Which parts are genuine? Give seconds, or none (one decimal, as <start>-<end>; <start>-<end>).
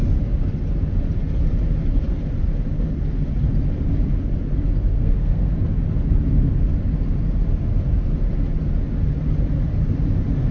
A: 0.0-4.9; 5.5-10.5